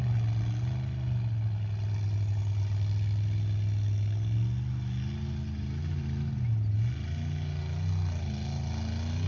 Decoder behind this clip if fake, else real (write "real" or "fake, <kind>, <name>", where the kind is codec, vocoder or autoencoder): real